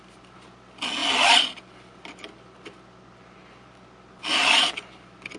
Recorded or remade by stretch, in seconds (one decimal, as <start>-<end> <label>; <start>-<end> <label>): 0.0-5.4 recorded